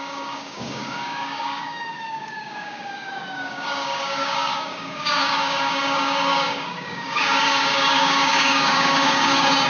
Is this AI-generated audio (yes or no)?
yes